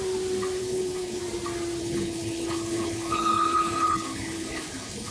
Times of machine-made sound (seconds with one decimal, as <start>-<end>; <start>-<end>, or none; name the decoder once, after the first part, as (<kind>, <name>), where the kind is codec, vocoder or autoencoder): 0.6-1.2 (codec, HILCodec); 1.8-5.1